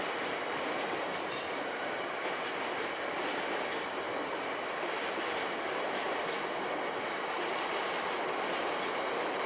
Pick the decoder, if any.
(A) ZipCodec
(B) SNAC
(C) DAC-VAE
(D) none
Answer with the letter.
D